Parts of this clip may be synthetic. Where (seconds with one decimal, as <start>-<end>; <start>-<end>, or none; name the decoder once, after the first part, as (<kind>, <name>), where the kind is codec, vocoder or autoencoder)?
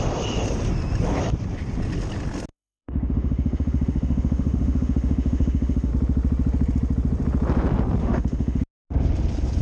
2.5-5.9 (autoencoder, DAC-VAE); 8.0-8.6